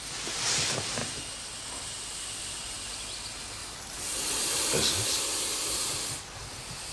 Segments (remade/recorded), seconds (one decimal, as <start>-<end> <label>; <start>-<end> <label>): 0.0-3.6 recorded; 3.6-5.5 remade; 5.5-6.9 recorded